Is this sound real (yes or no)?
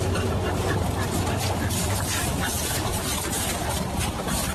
no